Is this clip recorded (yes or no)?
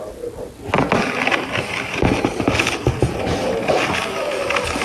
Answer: yes